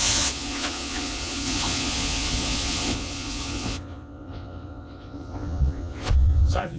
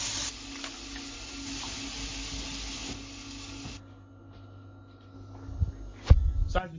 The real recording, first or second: second